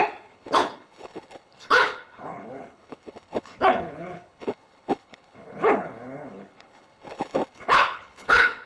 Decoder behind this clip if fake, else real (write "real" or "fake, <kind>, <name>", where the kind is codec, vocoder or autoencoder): fake, codec, HILCodec